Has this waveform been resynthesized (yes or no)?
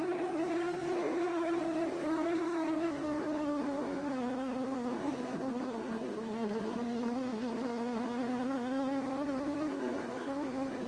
yes